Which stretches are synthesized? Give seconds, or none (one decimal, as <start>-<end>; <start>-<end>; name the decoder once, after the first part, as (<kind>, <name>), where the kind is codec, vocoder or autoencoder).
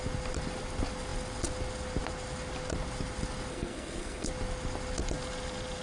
3.5-4.3 (codec, SNAC)